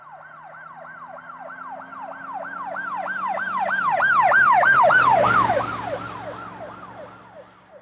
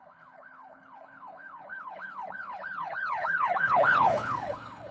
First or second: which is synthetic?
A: second